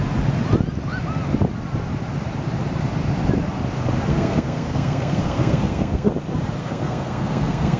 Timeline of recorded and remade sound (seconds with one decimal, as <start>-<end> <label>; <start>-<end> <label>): 0.0-4.1 recorded; 4.1-6.1 remade; 6.1-6.6 recorded; 6.6-7.8 remade